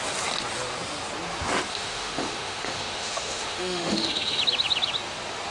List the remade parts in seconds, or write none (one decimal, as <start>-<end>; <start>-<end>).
1.7-4.4